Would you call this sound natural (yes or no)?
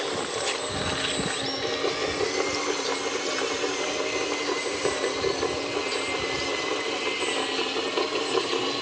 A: yes